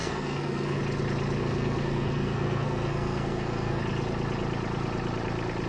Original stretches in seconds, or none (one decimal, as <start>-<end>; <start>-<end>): 0.8-1.4; 3.8-5.7

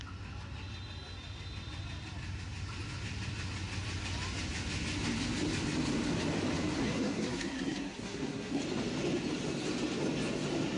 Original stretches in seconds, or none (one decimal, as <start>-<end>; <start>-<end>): 0.0-6.8; 8.6-10.8

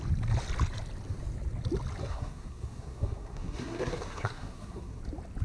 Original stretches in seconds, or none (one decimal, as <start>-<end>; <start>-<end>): 0.0-2.0; 5.0-5.4

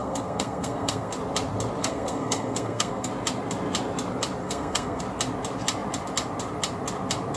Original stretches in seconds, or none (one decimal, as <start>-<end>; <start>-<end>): 1.1-1.8; 3.1-4.4; 5.0-7.4